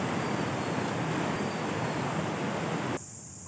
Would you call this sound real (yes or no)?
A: yes